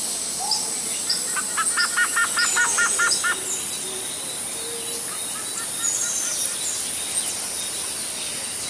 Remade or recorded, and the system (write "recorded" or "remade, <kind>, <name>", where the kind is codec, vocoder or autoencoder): recorded